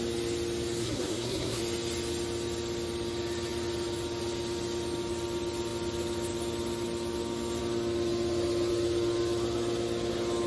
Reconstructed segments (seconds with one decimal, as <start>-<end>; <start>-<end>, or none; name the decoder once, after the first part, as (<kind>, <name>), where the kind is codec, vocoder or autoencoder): 0.8-1.6 (codec, SNAC)